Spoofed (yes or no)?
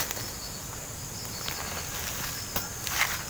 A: no